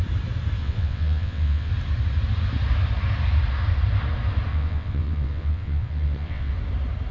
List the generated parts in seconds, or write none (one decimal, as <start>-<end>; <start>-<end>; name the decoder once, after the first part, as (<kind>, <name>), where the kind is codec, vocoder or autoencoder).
0.6-1.7 (vocoder, WaveNeXt); 4.5-6.5